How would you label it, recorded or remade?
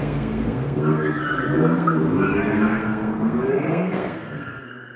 remade